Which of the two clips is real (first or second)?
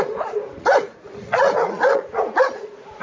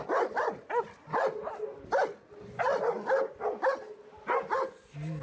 second